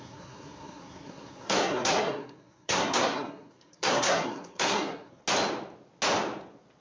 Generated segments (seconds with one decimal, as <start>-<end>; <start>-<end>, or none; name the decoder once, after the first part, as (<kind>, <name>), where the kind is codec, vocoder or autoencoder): 0.0-5.2 (codec, SNAC)